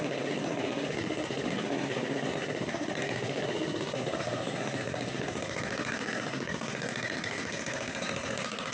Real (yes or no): no